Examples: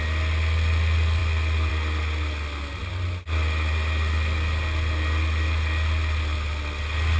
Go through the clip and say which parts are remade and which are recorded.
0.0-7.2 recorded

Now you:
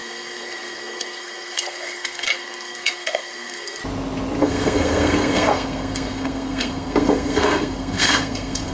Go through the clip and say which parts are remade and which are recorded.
0.0-3.8 remade; 3.8-4.4 recorded; 4.4-8.7 remade

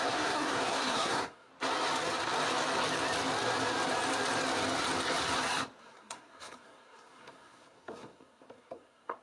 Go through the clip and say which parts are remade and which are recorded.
0.0-1.5 remade; 1.5-5.8 recorded; 5.8-9.2 remade

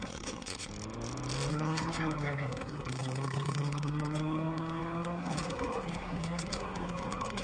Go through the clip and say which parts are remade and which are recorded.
0.0-0.7 remade; 0.7-1.5 recorded; 1.5-7.4 remade

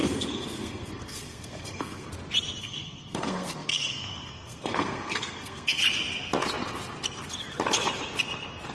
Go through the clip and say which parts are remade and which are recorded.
0.0-2.1 remade; 2.1-2.6 recorded; 2.6-5.8 remade; 5.8-8.7 recorded